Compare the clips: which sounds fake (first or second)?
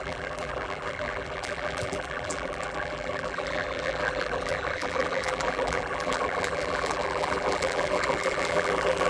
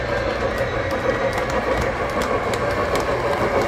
first